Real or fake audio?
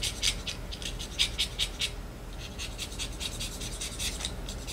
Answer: real